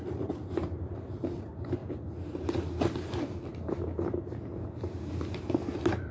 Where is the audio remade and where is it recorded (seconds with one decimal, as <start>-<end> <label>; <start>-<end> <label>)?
0.0-1.8 remade; 1.8-5.4 recorded; 5.4-6.1 remade